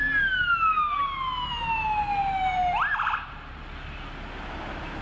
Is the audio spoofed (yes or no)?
no